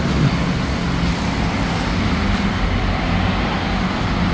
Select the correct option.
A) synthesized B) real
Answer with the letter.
B